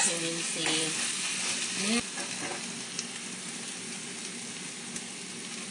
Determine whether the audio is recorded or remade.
recorded